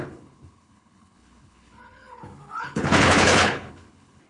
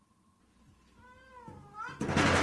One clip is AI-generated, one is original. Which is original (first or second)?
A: second